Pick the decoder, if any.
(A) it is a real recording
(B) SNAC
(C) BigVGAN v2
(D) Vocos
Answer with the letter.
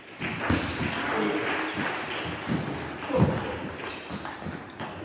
A